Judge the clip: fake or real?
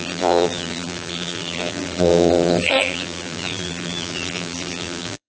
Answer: fake